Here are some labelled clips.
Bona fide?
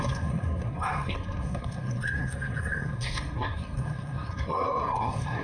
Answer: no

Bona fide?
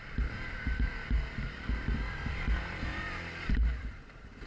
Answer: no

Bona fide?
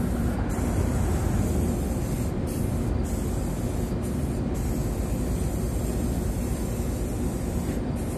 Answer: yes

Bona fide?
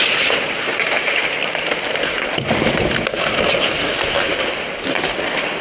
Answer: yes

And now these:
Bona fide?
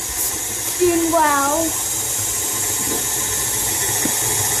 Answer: yes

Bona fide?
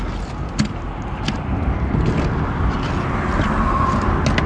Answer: yes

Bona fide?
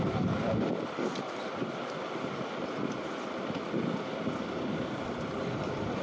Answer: no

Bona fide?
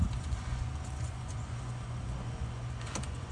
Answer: no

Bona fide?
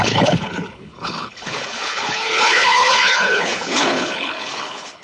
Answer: no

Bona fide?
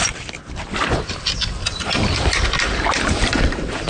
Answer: yes